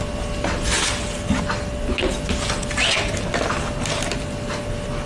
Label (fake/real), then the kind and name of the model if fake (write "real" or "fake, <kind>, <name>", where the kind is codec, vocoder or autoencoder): real